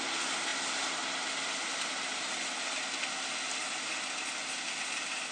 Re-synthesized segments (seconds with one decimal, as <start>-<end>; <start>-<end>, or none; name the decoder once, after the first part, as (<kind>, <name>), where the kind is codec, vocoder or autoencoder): none